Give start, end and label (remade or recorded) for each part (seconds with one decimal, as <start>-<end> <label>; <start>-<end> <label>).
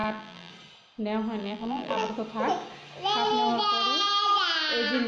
0.0-0.5 remade; 0.5-1.4 recorded; 1.4-2.1 remade; 2.1-5.1 recorded